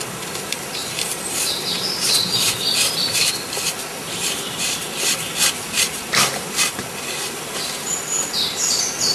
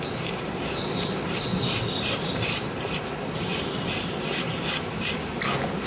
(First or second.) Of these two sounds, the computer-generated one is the first